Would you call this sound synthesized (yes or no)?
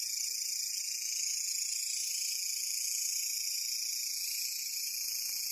yes